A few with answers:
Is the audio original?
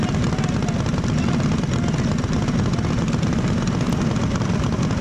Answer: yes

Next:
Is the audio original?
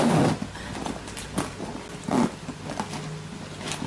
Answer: yes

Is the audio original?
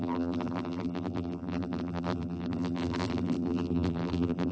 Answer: no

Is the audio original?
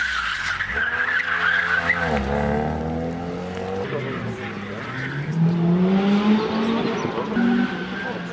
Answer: yes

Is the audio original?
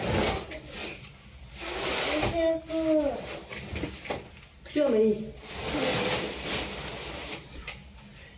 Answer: yes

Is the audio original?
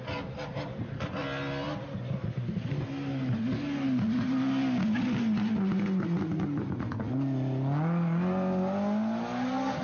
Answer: yes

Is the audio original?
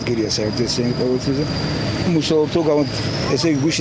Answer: yes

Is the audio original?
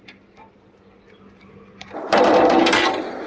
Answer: yes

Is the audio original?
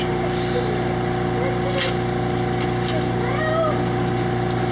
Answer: yes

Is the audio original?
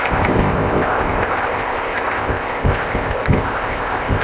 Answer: no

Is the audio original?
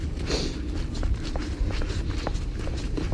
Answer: yes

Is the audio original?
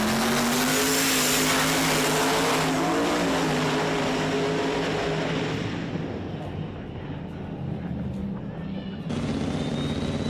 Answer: yes